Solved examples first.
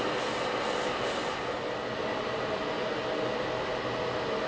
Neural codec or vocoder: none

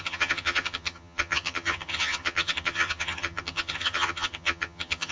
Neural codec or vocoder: vocoder, HiFi-GAN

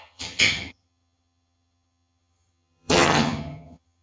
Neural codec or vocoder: vocoder, HiFi-GAN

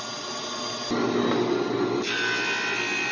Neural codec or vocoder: none